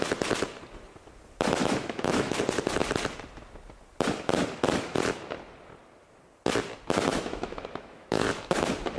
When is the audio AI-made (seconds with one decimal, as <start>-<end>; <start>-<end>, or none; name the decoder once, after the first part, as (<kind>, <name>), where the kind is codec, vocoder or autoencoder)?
1.6-2.4 (autoencoder, DAC-VAE); 7.1-8.3